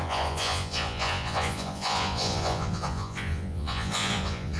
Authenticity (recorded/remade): remade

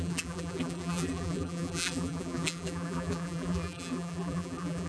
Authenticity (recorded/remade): remade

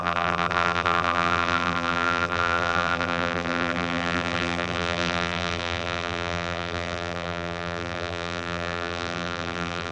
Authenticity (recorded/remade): remade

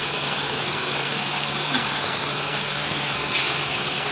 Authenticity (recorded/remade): remade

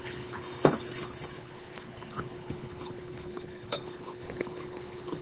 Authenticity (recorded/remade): remade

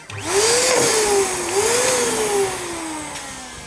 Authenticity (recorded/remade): recorded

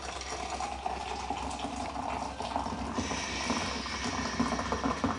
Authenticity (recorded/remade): recorded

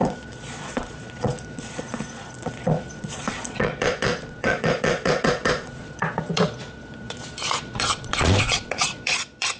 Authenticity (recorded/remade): remade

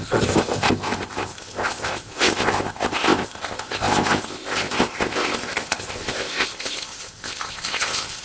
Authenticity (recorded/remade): remade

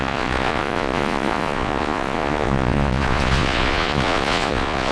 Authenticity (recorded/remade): remade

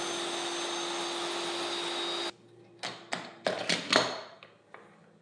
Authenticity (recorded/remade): recorded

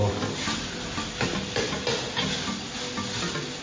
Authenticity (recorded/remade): recorded